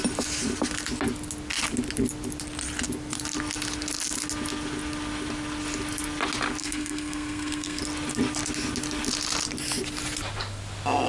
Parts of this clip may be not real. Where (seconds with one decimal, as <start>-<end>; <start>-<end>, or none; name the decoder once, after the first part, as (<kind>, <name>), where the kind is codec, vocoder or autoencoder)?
6.6-7.8 (codec, SNAC)